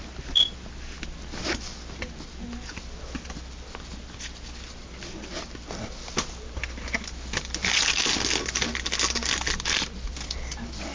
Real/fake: real